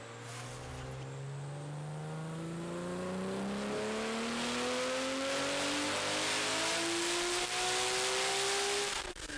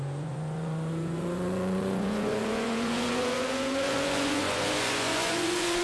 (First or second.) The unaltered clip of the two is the first